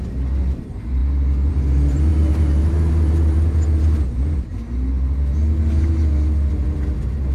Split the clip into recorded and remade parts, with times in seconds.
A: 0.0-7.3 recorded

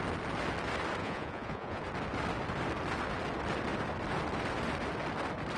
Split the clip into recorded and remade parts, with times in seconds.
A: 0.0-1.0 recorded; 1.0-1.8 remade; 1.8-5.6 recorded